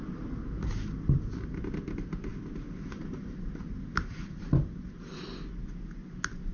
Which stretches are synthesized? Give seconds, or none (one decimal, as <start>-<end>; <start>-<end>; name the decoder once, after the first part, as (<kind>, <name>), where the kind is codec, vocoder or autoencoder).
none